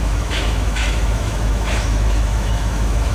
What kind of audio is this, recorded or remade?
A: remade